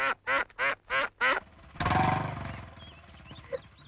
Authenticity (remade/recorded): recorded